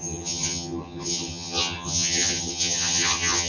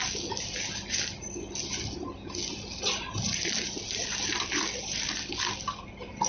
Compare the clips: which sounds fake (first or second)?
first